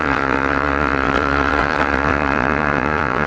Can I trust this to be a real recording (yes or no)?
no